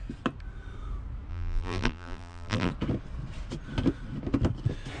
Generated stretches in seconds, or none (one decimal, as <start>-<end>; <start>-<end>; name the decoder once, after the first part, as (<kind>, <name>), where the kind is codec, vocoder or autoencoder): 1.3-2.7 (vocoder, BigVGAN v2)

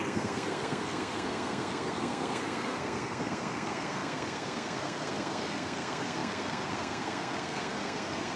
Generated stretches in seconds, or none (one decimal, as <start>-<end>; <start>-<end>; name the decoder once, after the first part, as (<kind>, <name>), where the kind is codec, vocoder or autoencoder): 0.0-8.4 (codec, SNAC)

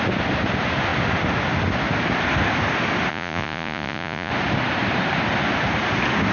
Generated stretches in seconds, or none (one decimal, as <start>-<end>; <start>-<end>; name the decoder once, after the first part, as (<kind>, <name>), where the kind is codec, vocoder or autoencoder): 3.1-4.3 (vocoder, Vocos)

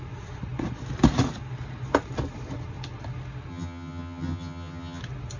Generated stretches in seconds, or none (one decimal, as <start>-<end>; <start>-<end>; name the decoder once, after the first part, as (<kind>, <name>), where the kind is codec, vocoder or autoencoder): 3.5-5.0 (vocoder, HiFi-GAN)

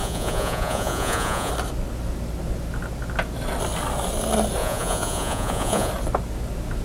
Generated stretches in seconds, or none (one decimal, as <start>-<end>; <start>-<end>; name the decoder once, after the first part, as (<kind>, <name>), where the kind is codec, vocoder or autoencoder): 0.0-1.5 (vocoder, Vocos); 4.6-5.9

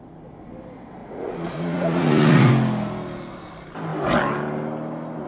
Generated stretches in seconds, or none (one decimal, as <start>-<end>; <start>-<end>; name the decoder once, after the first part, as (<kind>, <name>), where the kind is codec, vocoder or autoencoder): 1.0-2.5 (vocoder, Vocos)

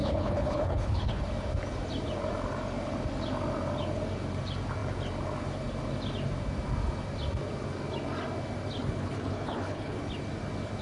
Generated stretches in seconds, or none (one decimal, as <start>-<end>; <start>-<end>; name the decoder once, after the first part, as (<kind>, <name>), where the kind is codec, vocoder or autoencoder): 0.0-1.2 (codec, HILCodec); 8.8-10.0

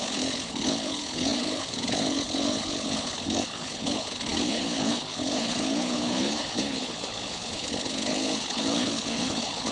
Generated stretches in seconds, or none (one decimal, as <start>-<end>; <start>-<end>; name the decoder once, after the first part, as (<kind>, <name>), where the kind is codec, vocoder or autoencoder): 0.0-9.7 (codec, HILCodec)